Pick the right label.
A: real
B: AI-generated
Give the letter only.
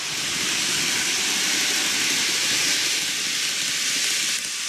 A